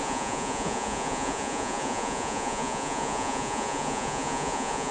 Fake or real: fake